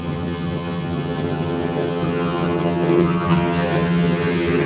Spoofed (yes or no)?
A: yes